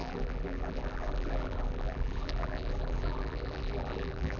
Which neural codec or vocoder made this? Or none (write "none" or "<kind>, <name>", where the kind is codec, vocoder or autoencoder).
vocoder, BigVGAN v2